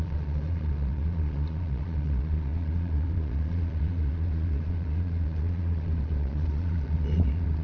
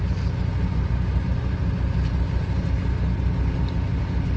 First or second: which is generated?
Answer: first